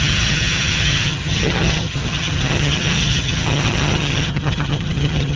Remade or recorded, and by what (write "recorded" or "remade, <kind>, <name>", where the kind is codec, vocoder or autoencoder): remade, vocoder, HiFi-GAN